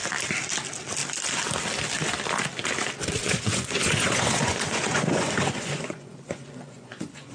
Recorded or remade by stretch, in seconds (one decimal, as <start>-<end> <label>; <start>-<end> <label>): 0.0-3.2 recorded; 3.2-7.3 remade